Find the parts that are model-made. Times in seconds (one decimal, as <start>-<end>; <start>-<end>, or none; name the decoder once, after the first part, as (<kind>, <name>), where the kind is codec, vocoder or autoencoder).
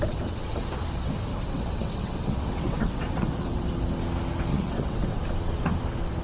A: 1.3-3.7 (vocoder, WaveNeXt); 4.5-5.2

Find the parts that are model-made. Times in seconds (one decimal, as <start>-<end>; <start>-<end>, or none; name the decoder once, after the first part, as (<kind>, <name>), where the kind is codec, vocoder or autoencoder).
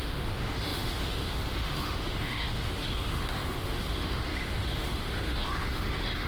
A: 0.0-6.3 (autoencoder, DAC-VAE)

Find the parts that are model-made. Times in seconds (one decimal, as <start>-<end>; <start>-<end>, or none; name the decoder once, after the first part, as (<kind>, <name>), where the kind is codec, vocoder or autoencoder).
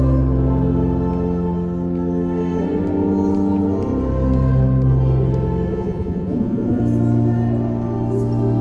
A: 5.7-6.8 (vocoder, Vocos)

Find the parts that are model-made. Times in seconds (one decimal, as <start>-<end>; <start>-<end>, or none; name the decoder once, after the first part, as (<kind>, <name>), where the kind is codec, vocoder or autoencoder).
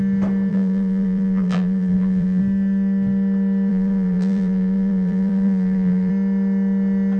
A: 0.5-2.4 (vocoder, BigVGAN v2); 3.7-6.1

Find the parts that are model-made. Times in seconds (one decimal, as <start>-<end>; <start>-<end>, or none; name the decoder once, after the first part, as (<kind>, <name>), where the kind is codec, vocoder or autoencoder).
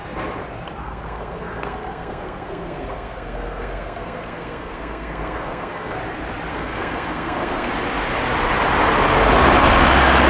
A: 0.8-6.0 (codec, SNAC); 6.5-7.7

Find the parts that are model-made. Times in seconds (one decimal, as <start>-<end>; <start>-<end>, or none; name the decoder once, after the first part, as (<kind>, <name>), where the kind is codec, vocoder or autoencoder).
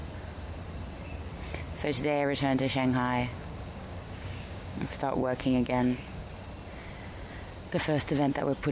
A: 3.3-6.3 (codec, DAC)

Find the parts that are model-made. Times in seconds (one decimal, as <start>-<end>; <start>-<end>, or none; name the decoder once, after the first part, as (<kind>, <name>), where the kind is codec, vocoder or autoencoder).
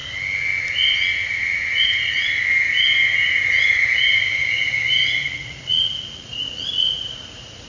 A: 1.8-2.2 (vocoder, Vocos); 3.8-7.7